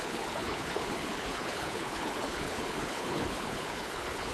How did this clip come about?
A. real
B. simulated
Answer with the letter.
B